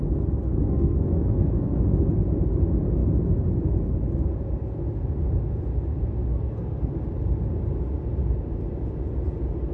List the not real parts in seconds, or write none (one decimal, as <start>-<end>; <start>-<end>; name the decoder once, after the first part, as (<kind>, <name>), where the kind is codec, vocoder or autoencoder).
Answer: 0.5-1.8 (codec, SNAC); 6.3-6.9

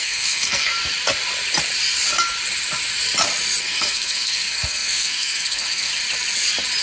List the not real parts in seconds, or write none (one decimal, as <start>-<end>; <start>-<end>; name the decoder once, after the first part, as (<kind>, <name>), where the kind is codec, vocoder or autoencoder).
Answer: 0.0-0.7 (codec, SNAC); 3.6-5.9

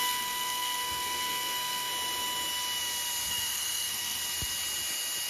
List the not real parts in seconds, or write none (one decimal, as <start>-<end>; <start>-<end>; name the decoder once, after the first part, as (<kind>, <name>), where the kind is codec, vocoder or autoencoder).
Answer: 0.0-1.9 (codec, SNAC); 3.3-4.2

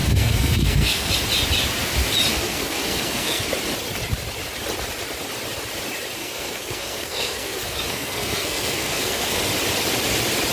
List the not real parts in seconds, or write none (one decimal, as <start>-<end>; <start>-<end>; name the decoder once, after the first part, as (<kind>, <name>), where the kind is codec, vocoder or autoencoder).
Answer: 0.0-1.1 (codec, SNAC); 2.3-3.5; 6.2-9.4

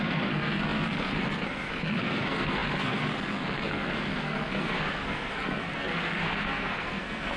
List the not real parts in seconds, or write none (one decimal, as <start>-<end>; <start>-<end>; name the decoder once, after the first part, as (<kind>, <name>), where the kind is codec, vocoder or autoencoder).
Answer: 0.0-7.4 (codec, SNAC)